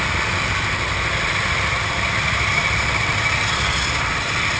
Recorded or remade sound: recorded